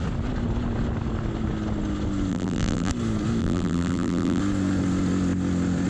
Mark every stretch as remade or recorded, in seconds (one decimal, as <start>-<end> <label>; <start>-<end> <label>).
0.0-2.3 recorded; 2.3-2.9 remade; 2.9-3.4 recorded; 3.4-4.4 remade; 4.4-5.9 recorded